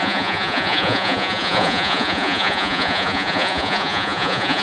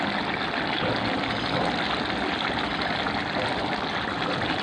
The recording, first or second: second